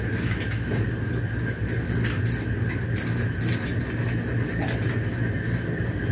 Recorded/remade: recorded